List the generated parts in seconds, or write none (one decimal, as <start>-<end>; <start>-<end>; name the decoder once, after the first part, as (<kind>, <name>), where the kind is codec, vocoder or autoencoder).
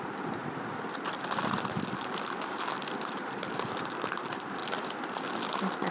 0.0-4.6 (vocoder, BigVGAN v2); 5.5-5.9